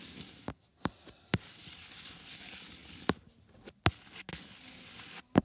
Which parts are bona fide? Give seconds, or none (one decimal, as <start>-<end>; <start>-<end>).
0.0-5.4